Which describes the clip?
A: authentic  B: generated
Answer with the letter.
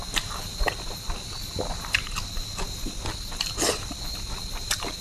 A